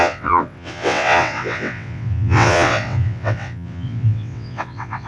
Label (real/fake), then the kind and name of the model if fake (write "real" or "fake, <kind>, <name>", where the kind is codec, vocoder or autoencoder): fake, vocoder, WaveNeXt